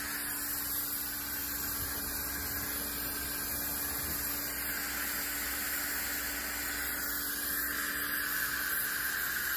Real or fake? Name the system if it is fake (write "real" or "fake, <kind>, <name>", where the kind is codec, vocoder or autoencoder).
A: real